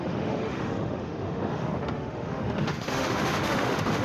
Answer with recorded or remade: remade